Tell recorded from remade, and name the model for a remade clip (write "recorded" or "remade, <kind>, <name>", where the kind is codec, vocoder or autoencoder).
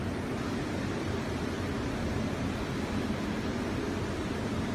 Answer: remade, vocoder, BigVGAN v2